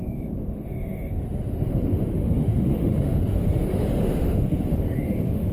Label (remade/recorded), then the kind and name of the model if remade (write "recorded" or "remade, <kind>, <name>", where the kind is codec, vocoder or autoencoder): remade, autoencoder, DAC-VAE